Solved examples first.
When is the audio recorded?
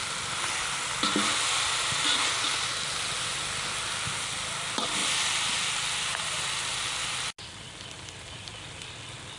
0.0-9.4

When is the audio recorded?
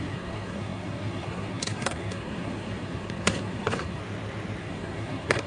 4.0-4.6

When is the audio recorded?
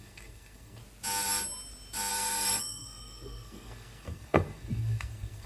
0.8-2.1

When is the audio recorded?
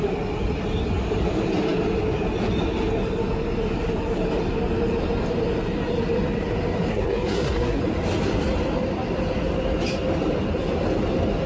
0.0-6.9; 7.8-11.5